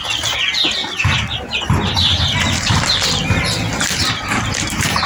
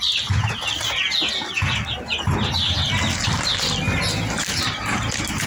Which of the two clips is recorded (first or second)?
second